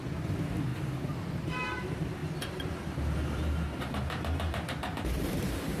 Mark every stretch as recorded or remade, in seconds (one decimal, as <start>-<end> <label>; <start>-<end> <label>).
0.0-0.7 remade; 0.7-1.3 recorded; 1.3-2.2 remade; 2.2-3.9 recorded; 3.9-5.8 remade